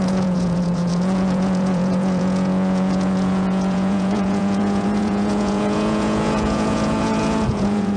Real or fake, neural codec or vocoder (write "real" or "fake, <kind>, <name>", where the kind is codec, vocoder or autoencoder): fake, vocoder, Vocos